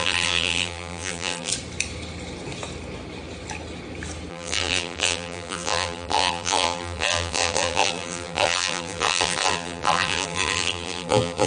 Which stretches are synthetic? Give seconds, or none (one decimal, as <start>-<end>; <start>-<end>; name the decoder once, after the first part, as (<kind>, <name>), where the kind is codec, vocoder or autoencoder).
0.0-1.5 (vocoder, BigVGAN v2); 4.3-11.5